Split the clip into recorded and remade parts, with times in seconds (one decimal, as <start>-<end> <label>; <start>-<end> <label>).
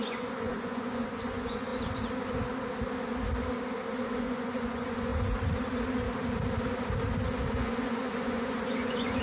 0.0-1.7 remade; 1.7-4.2 recorded; 4.2-5.1 remade; 5.1-7.5 recorded; 7.5-9.2 remade